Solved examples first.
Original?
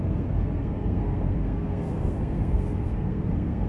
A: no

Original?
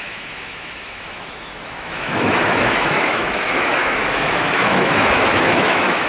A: no